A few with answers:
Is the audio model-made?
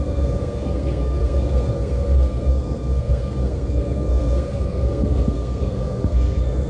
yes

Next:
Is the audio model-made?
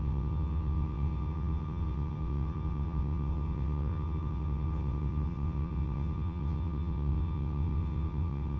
yes